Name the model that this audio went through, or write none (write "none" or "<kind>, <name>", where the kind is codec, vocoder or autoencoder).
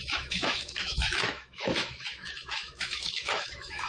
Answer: autoencoder, DAC-VAE